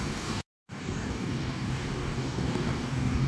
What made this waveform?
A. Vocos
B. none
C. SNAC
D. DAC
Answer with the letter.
D